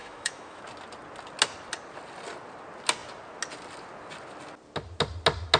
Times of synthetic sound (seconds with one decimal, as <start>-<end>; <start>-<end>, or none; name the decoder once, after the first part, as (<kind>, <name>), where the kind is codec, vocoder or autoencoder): 0.0-0.6 (autoencoder, DAC-VAE)